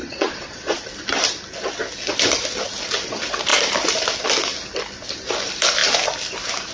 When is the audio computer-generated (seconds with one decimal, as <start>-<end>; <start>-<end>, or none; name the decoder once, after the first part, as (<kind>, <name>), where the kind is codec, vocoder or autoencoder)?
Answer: 0.0-0.8 (vocoder, Vocos)